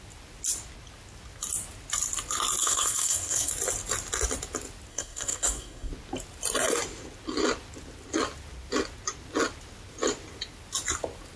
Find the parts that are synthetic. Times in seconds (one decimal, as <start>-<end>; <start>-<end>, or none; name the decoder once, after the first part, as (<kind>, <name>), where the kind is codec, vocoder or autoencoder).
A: 2.6-3.5 (codec, SNAC); 4.9-5.9